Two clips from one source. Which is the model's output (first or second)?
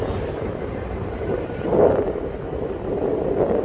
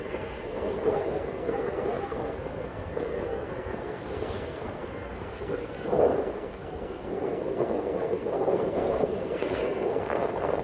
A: second